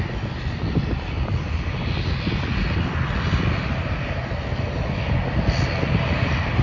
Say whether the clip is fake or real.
real